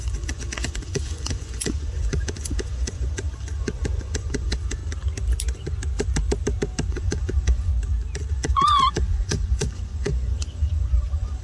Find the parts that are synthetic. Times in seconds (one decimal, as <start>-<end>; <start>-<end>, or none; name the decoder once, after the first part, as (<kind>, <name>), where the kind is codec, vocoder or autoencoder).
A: 0.0-4.8 (vocoder, Vocos); 6.9-7.7; 8.3-11.4